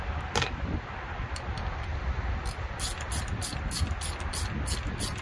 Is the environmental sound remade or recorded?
recorded